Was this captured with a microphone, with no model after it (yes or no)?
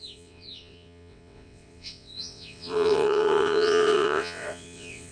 no